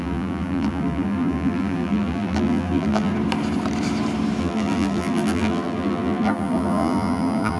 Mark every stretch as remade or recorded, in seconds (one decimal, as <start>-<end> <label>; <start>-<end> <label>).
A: 0.0-3.1 remade; 3.1-4.4 recorded; 4.4-7.6 remade